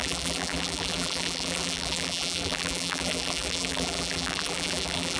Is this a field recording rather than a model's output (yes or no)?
no